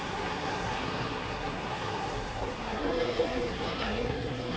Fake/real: fake